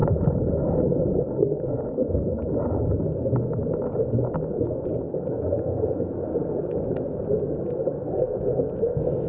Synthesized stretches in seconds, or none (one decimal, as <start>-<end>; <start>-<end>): 0.0-3.0; 3.8-9.3

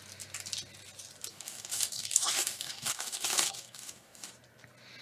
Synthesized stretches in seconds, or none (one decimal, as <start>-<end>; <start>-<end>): 1.3-4.3

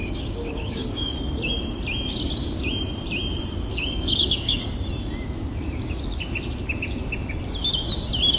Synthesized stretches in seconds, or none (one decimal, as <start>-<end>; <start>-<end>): 0.0-1.1; 3.7-4.7

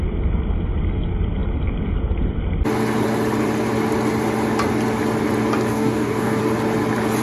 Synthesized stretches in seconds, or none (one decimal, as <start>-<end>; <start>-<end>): 5.7-6.4

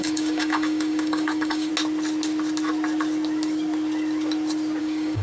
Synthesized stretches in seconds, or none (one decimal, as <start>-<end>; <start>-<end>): 0.0-1.7; 4.8-5.2

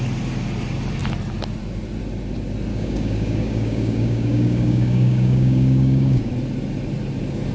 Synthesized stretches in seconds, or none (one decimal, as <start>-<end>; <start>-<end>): 2.7-6.3

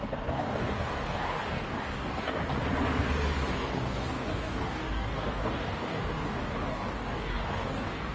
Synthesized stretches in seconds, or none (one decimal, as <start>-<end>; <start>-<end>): 0.0-2.4; 3.5-8.1